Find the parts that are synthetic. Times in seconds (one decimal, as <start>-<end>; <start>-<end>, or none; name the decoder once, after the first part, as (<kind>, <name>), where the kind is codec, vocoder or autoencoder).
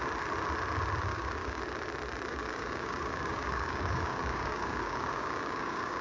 1.1-1.6 (codec, DAC); 2.3-6.0